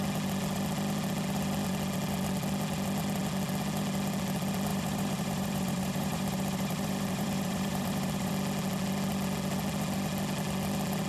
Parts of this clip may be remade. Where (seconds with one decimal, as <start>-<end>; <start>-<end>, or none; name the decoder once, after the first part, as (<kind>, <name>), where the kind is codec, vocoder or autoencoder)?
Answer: 4.7-8.3 (vocoder, BigVGAN v2)